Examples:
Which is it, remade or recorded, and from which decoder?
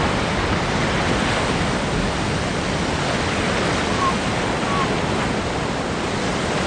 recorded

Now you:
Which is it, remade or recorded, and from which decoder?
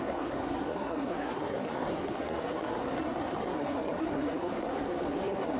remade, codec, SNAC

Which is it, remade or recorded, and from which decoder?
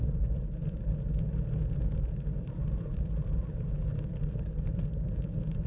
recorded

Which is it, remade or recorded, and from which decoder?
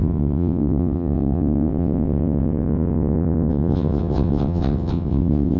remade, vocoder, WaveNeXt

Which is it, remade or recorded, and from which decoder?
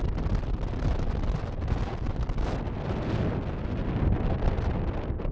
recorded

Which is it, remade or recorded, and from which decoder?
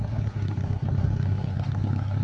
remade, codec, SNAC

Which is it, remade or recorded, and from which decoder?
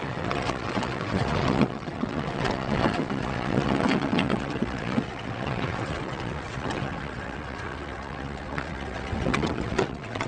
remade, vocoder, WaveNeXt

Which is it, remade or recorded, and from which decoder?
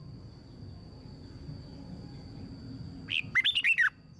recorded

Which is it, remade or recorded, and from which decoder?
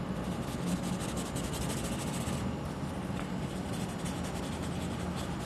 recorded